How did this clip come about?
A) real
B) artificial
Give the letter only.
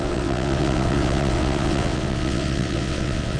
B